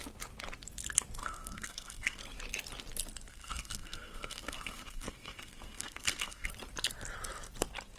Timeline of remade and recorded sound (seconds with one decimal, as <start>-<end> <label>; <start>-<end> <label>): 0.0-1.2 recorded; 1.2-2.2 remade; 2.2-3.3 recorded; 3.3-6.5 remade; 6.5-8.0 recorded